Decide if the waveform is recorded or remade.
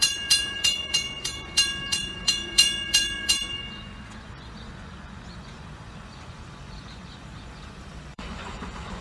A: remade